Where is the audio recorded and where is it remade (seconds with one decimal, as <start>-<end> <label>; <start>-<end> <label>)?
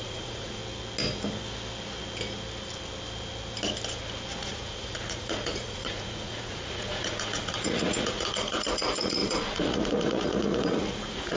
0.0-0.6 remade; 0.6-4.4 recorded; 4.4-11.4 remade